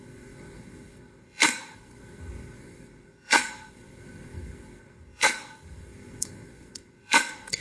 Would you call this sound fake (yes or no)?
yes